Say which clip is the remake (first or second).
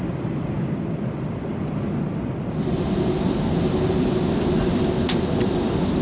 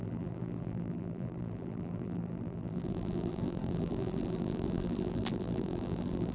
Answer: second